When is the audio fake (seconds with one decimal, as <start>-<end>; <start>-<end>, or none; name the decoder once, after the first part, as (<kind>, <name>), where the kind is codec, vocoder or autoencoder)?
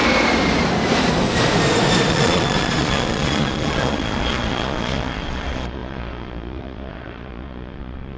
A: 2.1-8.2 (vocoder, Vocos)